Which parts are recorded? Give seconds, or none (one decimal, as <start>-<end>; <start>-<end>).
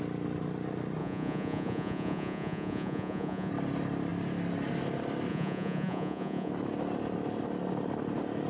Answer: 0.0-1.0; 3.5-5.3; 6.5-8.5